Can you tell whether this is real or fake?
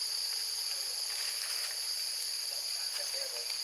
real